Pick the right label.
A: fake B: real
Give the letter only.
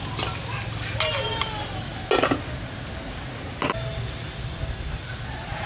B